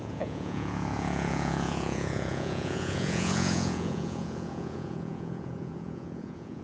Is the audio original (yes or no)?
no